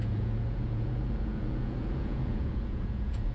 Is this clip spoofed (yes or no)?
yes